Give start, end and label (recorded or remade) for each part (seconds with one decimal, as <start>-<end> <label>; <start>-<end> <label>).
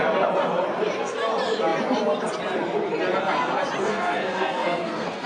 0.0-3.8 recorded; 3.8-5.3 remade